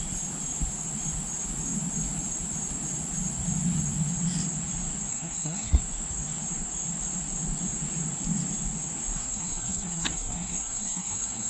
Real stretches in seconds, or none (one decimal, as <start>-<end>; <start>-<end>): 0.0-5.1; 5.8-9.2